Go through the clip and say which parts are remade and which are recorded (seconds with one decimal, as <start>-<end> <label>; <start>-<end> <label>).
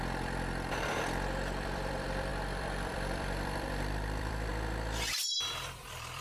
0.0-4.5 remade; 4.5-5.1 recorded; 5.1-6.2 remade